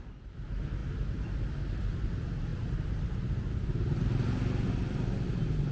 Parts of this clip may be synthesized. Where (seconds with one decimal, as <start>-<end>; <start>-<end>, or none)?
none